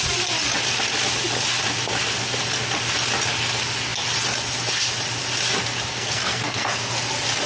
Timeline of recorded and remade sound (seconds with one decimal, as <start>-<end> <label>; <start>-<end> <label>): 0.0-5.9 recorded; 5.9-6.9 remade; 6.9-7.5 recorded